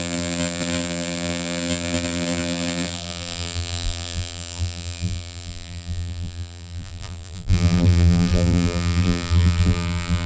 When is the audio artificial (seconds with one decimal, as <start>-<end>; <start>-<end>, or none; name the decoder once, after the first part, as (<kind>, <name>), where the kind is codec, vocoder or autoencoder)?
0.0-10.3 (vocoder, BigVGAN v2)